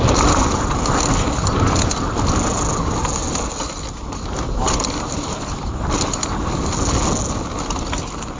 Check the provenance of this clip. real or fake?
real